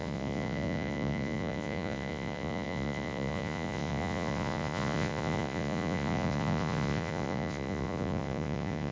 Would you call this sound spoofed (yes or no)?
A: yes